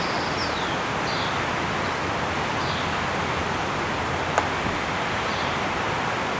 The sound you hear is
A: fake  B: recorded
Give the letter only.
B